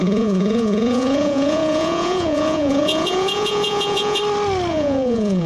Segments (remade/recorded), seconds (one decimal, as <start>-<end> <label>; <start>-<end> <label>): 0.0-4.2 remade; 4.2-4.7 recorded; 4.7-5.5 remade